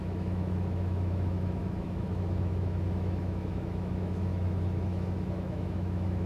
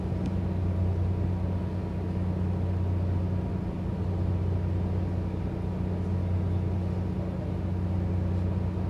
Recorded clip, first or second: second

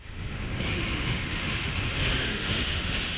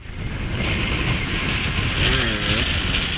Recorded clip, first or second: second